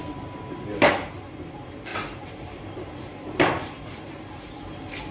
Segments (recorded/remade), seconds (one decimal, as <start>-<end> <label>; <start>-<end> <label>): 0.0-1.9 recorded; 1.9-4.5 remade; 4.5-5.1 recorded